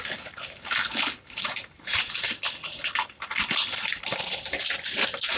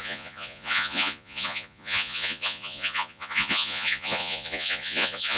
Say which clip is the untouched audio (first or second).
first